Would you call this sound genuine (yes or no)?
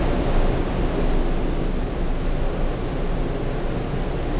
yes